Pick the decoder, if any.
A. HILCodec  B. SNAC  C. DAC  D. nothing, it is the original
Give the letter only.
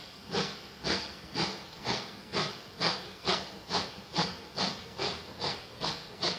B